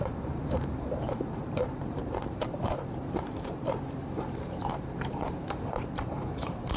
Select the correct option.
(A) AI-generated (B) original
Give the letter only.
A